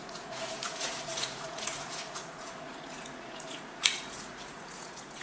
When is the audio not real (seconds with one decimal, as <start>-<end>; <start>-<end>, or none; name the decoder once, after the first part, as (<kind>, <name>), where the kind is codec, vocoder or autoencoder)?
0.0-5.2 (vocoder, Vocos)